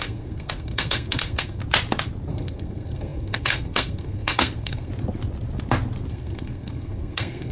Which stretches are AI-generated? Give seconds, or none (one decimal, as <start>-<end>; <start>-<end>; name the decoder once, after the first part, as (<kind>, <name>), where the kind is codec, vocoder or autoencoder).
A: 0.0-1.6 (codec, SNAC); 2.3-4.9; 6.1-7.5

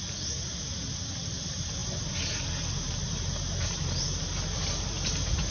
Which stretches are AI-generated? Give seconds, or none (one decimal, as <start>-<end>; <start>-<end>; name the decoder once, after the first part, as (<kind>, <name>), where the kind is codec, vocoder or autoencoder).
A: none

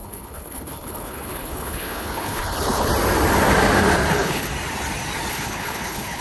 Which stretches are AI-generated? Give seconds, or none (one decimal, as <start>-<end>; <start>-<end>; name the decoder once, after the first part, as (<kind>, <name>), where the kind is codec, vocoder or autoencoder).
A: 0.0-2.9 (codec, HILCodec); 4.1-4.5; 5.3-6.2

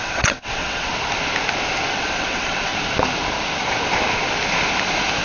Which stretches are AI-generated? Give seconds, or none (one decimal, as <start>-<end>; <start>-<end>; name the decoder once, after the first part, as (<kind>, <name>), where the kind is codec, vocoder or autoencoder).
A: 0.0-0.9 (vocoder, WaveNeXt); 1.9-2.7